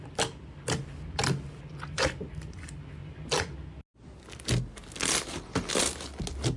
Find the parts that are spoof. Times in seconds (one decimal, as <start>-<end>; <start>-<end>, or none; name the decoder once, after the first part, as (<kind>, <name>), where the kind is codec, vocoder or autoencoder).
none